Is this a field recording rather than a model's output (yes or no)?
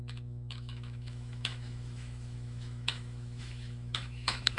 no